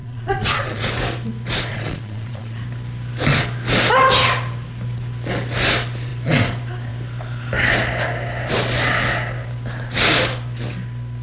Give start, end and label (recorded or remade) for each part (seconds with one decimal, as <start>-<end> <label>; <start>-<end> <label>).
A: 0.0-0.9 remade; 0.9-1.7 recorded; 1.7-2.6 remade; 2.6-11.2 recorded